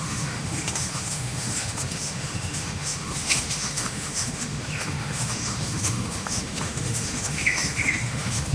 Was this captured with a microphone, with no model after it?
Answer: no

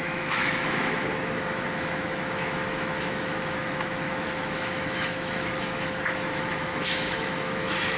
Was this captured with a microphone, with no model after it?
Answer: no